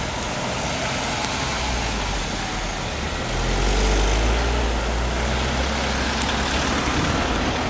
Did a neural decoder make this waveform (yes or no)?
no